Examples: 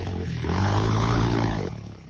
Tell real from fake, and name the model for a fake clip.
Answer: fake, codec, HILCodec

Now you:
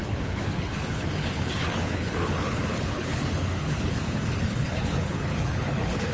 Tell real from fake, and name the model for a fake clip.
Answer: fake, codec, HILCodec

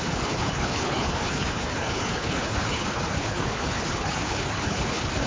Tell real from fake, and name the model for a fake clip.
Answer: fake, codec, HILCodec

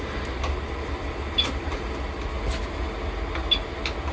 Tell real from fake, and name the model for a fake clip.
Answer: real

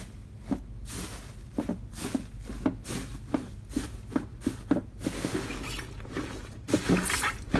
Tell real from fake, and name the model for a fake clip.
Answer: real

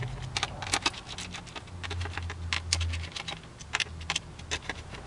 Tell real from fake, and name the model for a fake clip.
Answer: real